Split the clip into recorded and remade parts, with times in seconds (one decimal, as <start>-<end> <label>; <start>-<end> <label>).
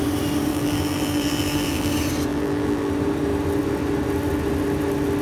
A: 0.0-0.5 recorded; 0.5-1.9 remade; 1.9-2.3 recorded; 2.3-2.9 remade; 2.9-5.2 recorded